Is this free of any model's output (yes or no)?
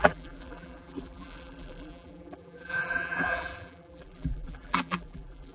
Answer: no